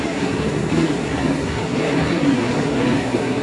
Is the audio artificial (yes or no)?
yes